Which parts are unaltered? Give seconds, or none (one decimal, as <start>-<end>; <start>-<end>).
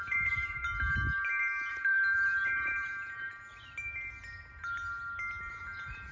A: 0.6-1.7; 3.3-5.5